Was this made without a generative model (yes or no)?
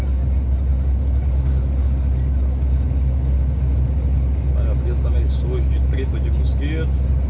yes